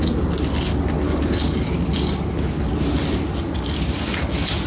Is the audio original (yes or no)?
yes